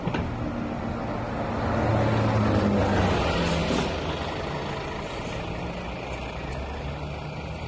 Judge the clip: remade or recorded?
recorded